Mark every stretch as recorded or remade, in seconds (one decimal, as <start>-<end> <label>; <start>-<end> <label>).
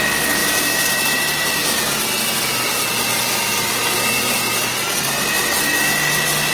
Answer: 0.0-0.4 recorded; 0.4-2.0 remade; 2.0-6.5 recorded